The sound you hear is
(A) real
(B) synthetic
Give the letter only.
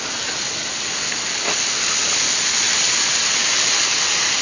A